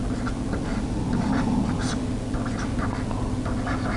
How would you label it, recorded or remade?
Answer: recorded